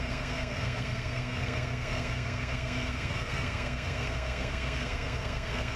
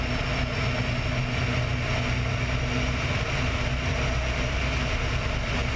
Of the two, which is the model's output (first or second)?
first